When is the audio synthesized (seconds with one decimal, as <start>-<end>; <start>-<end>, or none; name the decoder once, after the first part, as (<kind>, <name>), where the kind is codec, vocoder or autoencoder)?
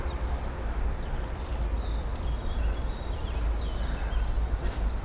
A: none